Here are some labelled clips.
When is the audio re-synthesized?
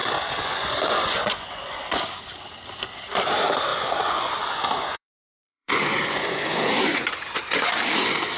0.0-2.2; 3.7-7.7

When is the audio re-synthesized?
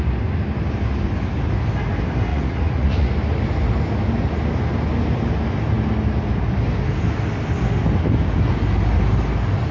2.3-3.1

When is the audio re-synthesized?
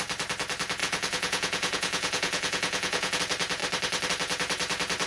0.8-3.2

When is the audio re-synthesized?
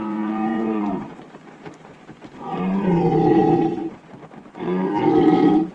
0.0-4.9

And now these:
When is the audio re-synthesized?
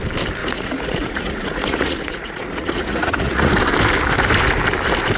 0.4-3.5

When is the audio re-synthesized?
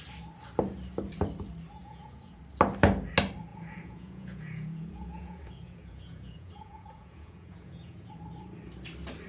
1.8-2.4; 3.5-8.1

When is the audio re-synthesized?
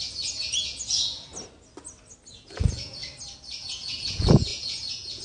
0.0-1.3; 2.3-3.0; 3.6-5.2